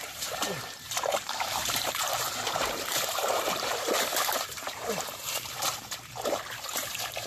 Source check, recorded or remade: remade